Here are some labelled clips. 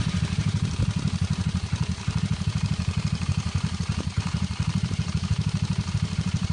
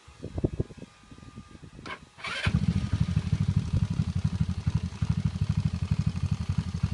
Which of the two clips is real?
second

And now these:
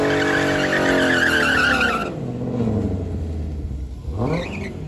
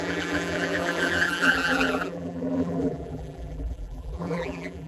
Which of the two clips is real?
first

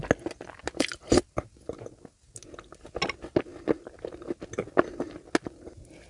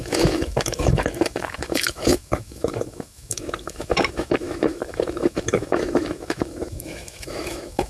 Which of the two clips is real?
first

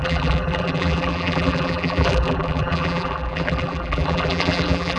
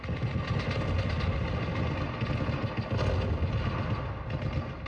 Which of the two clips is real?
second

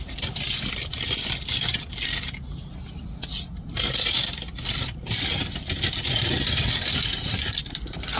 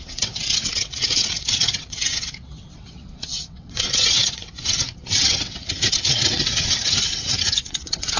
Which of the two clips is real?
first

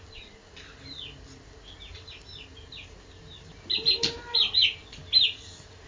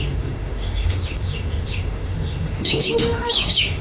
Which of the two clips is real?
first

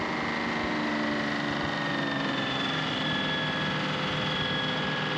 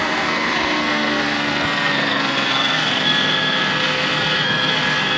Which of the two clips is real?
first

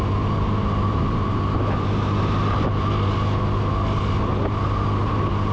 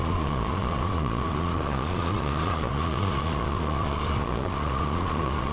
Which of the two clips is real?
first